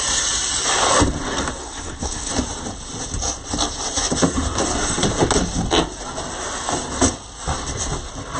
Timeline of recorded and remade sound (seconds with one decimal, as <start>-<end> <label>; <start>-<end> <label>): 0.0-1.6 recorded; 1.6-2.3 remade; 2.3-8.4 recorded